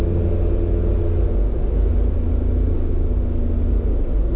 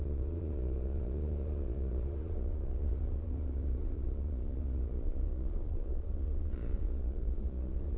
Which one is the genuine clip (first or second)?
first